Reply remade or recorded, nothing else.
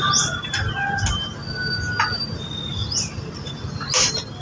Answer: recorded